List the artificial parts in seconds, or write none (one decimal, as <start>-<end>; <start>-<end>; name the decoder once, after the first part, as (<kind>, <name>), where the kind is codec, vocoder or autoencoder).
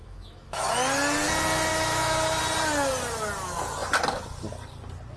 0.0-0.7 (autoencoder, DAC-VAE); 1.7-2.4